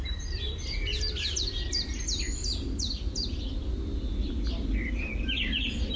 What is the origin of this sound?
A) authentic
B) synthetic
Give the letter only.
A